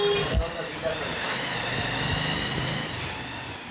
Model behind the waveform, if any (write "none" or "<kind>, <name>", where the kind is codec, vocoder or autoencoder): none